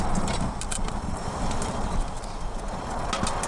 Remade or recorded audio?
recorded